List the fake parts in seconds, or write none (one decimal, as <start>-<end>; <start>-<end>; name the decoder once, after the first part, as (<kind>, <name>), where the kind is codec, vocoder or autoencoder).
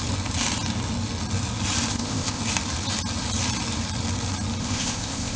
1.9-2.4 (codec, ZipCodec); 4.6-5.4